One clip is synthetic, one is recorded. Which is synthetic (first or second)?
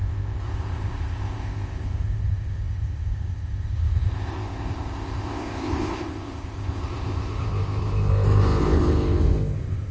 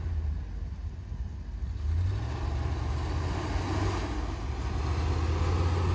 first